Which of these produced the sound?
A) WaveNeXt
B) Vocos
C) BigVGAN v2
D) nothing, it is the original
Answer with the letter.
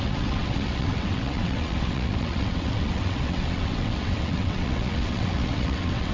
A